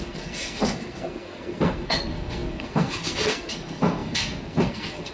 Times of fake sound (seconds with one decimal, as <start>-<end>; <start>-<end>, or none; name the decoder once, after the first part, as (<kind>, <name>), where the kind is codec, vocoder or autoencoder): 0.0-5.1 (codec, SNAC)